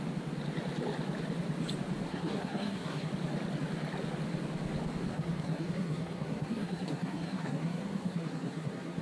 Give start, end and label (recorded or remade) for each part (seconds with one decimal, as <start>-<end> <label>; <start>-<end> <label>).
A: 0.0-2.1 recorded; 2.1-3.1 remade; 3.1-5.1 recorded; 5.1-9.0 remade